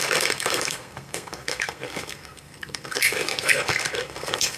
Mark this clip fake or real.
fake